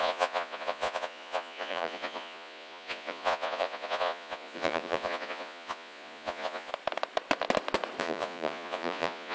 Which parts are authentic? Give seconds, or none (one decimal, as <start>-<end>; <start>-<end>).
6.7-8.0